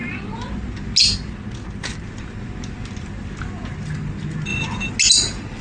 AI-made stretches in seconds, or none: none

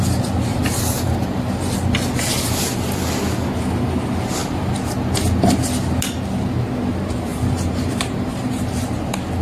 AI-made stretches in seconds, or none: 0.5-1.5 (vocoder, BigVGAN v2); 7.3-8.8